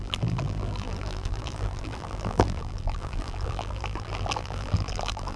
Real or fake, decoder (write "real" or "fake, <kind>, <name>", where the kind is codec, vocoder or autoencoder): fake, vocoder, BigVGAN v2